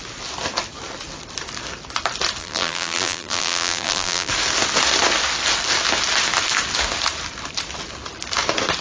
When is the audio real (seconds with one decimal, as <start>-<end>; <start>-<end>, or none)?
0.0-2.4; 4.3-8.8